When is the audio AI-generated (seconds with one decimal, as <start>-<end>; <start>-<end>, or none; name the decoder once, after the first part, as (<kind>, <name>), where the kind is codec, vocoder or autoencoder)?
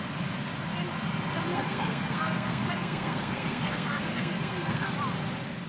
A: 1.5-4.9 (codec, SNAC)